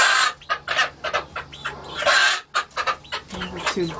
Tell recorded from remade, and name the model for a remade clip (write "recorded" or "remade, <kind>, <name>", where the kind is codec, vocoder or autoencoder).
recorded